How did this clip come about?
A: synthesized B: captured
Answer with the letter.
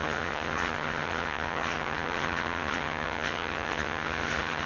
A